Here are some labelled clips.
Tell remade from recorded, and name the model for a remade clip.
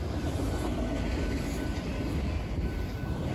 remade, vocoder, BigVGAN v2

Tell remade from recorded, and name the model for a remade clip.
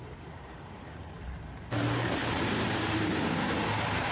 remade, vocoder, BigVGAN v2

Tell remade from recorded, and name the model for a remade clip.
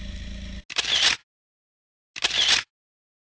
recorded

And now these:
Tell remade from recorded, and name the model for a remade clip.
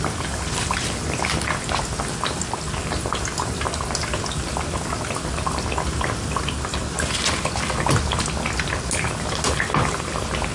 recorded